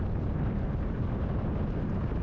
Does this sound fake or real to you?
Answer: real